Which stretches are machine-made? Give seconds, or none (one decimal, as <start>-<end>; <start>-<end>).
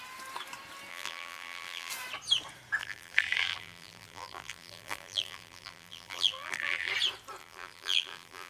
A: 0.9-1.9; 2.8-6.9; 7.4-8.5